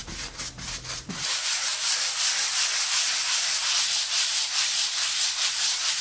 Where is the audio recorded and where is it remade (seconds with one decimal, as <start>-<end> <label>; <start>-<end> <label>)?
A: 0.0-0.6 recorded; 0.6-6.0 remade